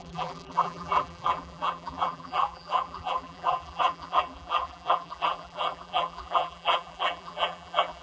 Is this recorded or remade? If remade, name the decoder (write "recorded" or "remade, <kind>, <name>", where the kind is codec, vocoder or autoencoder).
remade, vocoder, BigVGAN v2